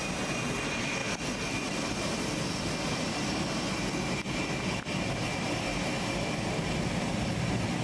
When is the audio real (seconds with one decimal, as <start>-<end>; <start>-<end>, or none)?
0.0-7.8